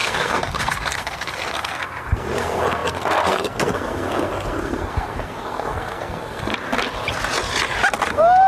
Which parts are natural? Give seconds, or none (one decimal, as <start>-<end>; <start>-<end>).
6.5-8.1